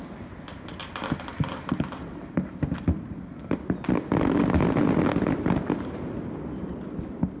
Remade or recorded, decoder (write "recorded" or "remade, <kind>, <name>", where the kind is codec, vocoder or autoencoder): recorded